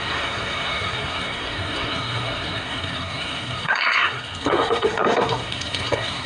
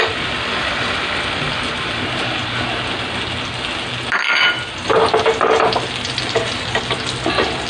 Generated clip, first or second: first